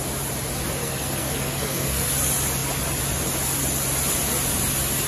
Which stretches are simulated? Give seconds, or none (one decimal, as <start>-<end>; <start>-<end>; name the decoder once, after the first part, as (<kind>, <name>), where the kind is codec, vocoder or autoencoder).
0.8-2.1 (codec, SNAC)